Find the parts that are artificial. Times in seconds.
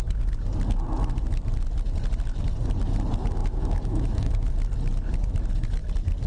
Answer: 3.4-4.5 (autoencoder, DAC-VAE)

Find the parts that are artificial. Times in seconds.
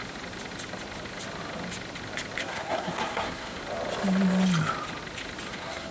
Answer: 2.4-3.6 (codec, SNAC); 5.5-5.9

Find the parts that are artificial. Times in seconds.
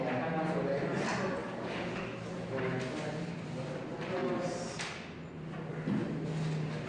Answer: 1.4-2.2 (codec, DAC)